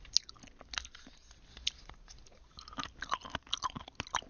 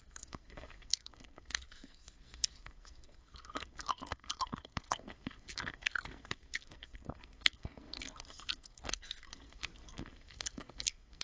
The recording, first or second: first